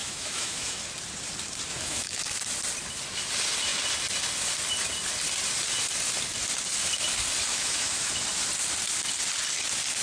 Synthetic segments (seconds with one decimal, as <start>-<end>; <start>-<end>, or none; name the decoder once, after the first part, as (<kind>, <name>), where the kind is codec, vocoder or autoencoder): 0.0-0.8 (autoencoder, DAC-VAE); 1.7-2.4; 7.5-8.1